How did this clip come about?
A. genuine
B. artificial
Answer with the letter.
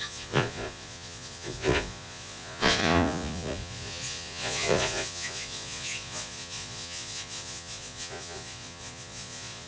B